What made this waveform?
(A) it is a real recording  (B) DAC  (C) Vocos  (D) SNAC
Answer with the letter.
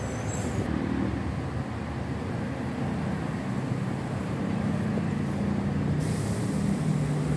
A